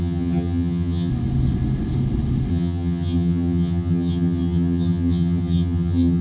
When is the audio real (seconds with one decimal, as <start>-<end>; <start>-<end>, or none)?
1.1-2.5